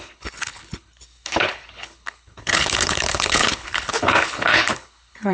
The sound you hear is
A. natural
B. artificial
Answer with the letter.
B